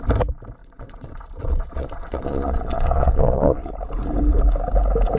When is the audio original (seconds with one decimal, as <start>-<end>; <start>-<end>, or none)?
0.0-0.6; 3.7-5.2